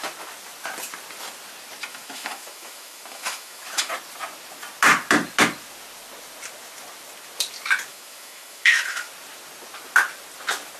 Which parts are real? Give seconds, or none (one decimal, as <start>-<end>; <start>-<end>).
0.0-1.9; 3.9-7.9; 9.1-10.8

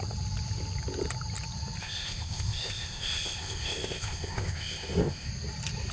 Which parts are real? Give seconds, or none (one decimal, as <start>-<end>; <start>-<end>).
0.0-1.8; 5.3-5.9

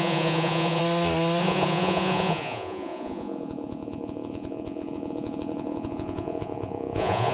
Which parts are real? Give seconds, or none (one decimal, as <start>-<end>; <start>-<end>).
0.8-1.4

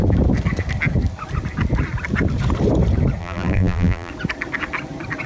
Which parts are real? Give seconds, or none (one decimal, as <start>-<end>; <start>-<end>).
0.0-3.2; 4.1-5.3

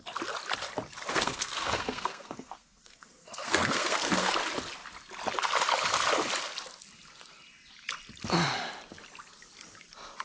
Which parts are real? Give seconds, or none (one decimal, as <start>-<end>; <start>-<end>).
0.0-1.1; 4.3-10.2

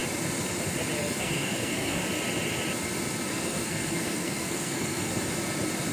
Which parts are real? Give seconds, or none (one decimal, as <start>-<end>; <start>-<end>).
0.0-1.0; 2.0-3.3; 5.1-5.9